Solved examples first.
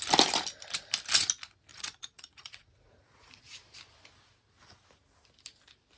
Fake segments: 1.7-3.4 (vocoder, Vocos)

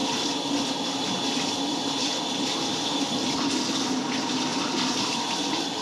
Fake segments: 0.0-3.5 (vocoder, BigVGAN v2); 4.5-5.8